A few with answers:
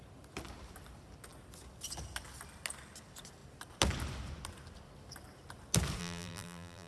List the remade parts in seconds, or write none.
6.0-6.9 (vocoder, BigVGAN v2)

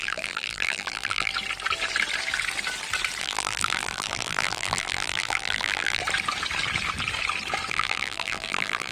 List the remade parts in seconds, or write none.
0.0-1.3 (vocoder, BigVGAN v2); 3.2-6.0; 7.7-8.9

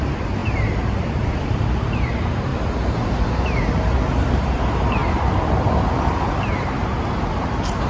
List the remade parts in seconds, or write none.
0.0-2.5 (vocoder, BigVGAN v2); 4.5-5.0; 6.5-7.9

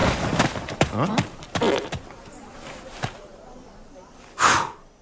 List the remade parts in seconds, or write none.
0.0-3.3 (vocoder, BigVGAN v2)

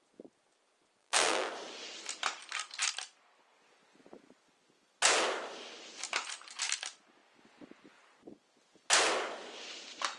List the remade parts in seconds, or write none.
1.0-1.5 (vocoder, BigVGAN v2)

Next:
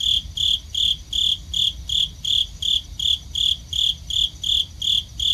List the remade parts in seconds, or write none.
1.2-4.4 (vocoder, BigVGAN v2)

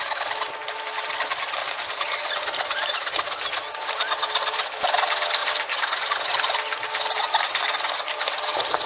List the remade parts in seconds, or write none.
1.6-3.8 (vocoder, BigVGAN v2)

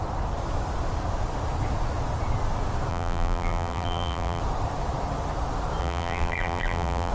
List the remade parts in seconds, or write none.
2.9-4.4 (vocoder, BigVGAN v2); 5.8-7.1